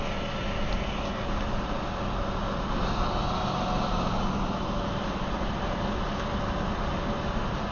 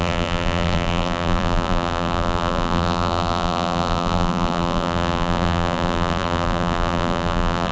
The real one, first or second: first